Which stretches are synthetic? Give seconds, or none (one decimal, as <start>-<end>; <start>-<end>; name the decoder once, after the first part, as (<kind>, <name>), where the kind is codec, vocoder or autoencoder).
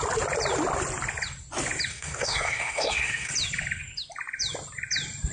1.9-3.3 (codec, SNAC)